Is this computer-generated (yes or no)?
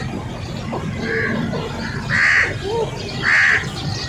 no